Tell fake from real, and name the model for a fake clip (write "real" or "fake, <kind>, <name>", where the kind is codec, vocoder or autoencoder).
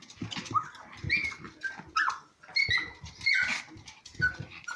real